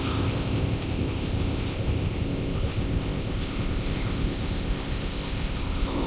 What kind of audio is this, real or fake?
fake